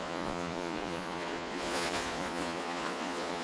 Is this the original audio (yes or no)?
no